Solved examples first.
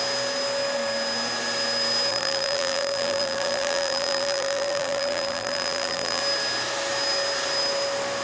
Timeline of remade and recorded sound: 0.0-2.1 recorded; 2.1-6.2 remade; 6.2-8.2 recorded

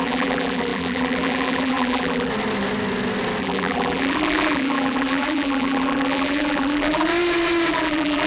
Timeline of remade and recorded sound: 0.0-2.3 remade; 2.3-3.4 recorded; 3.4-7.1 remade; 7.1-7.7 recorded; 7.7-8.3 remade

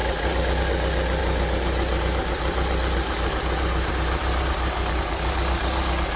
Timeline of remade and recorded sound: 0.0-1.2 recorded; 1.2-4.9 remade; 4.9-6.2 recorded

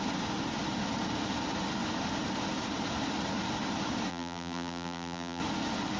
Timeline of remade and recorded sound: 0.0-4.1 recorded; 4.1-5.4 remade; 5.4-6.0 recorded